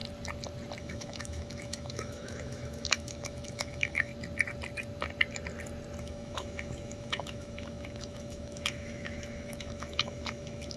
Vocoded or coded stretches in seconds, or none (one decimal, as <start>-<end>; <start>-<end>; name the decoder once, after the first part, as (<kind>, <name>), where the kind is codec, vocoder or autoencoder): 0.8-4.1 (autoencoder, DAC-VAE); 6.0-10.8